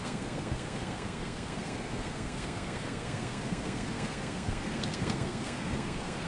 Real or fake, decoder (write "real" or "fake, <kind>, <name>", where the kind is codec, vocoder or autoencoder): fake, codec, SNAC